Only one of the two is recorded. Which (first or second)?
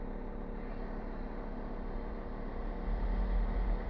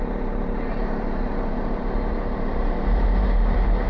first